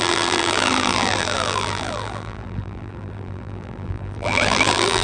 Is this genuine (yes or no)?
no